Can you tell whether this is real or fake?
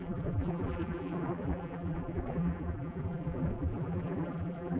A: fake